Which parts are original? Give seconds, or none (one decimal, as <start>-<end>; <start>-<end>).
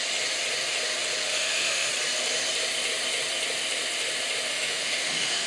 0.0-1.2; 1.9-4.5